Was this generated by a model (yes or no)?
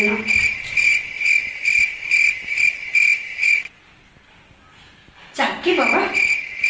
no